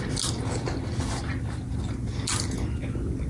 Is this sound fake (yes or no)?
no